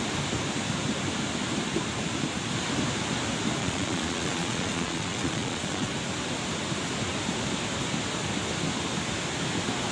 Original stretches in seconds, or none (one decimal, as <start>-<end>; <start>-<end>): 0.0-3.6; 5.9-9.9